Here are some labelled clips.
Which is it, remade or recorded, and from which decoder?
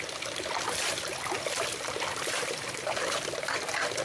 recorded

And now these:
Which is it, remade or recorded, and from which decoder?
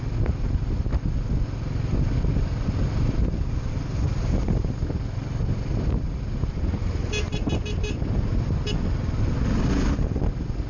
recorded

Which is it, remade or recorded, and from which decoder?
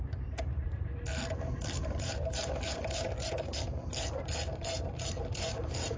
remade, vocoder, BigVGAN v2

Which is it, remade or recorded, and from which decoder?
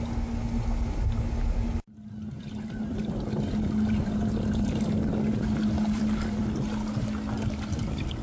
recorded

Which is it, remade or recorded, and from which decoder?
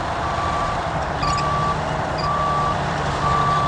remade, vocoder, BigVGAN v2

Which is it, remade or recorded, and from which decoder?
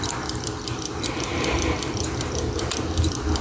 remade, vocoder, BigVGAN v2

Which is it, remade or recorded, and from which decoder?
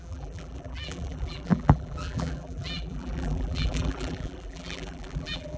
remade, vocoder, BigVGAN v2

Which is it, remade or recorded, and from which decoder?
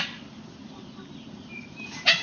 recorded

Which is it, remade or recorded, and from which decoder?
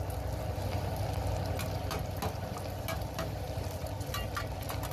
recorded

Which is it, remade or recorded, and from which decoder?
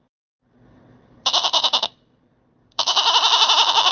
remade, vocoder, BigVGAN v2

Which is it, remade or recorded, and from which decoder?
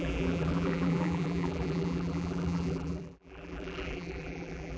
remade, vocoder, BigVGAN v2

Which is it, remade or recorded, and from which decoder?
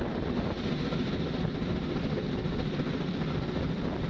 recorded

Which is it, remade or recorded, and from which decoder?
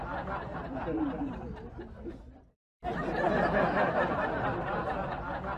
recorded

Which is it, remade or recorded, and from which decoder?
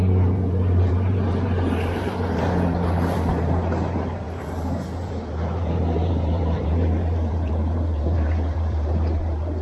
remade, vocoder, BigVGAN v2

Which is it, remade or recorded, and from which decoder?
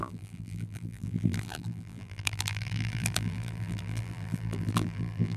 remade, vocoder, BigVGAN v2